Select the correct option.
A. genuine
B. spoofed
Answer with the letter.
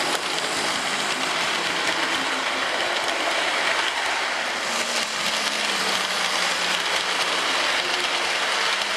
A